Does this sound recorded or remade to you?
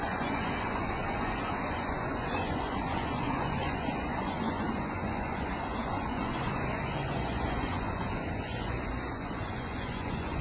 remade